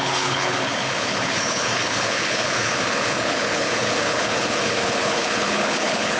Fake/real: fake